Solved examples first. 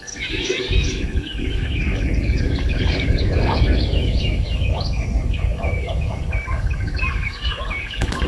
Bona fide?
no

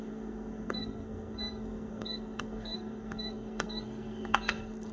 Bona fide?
no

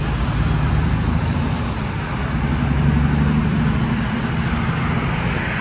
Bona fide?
yes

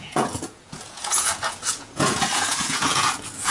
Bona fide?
no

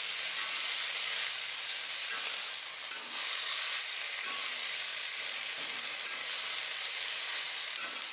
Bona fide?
yes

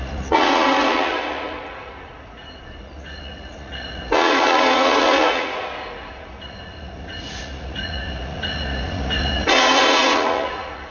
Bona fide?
no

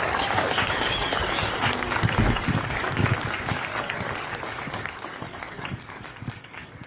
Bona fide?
no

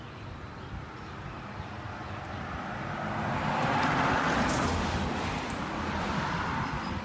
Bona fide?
yes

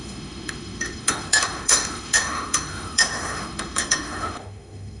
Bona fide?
no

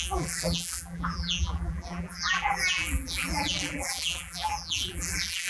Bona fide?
no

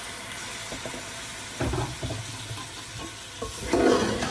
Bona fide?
yes